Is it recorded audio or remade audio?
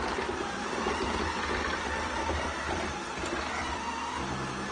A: recorded